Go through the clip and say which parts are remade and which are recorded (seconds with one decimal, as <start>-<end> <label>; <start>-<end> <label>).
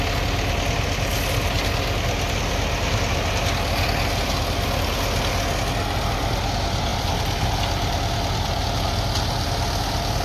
0.0-6.9 recorded; 6.9-7.6 remade; 7.6-10.2 recorded